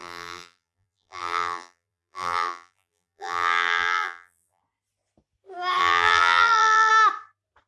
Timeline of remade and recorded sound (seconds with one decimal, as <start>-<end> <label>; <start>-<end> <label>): 0.0-4.6 remade; 4.6-5.8 recorded; 5.8-6.9 remade; 6.9-7.7 recorded